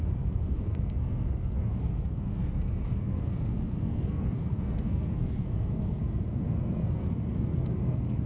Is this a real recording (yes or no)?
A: no